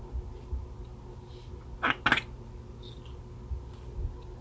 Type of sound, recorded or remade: recorded